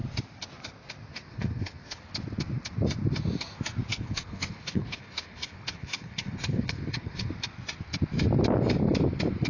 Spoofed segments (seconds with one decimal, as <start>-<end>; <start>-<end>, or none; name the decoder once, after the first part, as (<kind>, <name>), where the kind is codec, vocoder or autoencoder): 1.1-2.0 (codec, HILCodec); 3.9-7.3